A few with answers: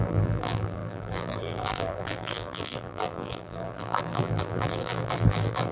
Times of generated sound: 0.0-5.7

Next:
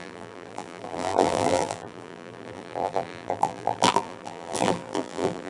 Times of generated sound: 0.0-5.5

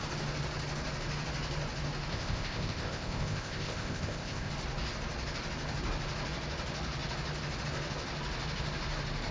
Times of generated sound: 2.1-4.5

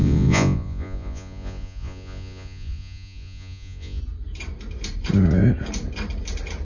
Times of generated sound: 0.0-4.0

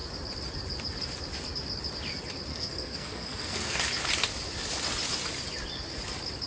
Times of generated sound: 2.5-3.8

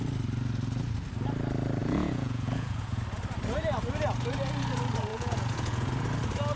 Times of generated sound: 1.8-3.0; 5.1-5.9

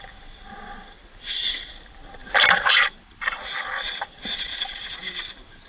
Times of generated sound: none

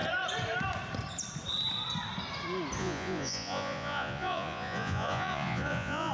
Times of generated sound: 2.8-6.1